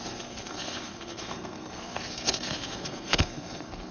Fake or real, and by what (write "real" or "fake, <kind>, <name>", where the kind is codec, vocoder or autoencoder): fake, codec, SNAC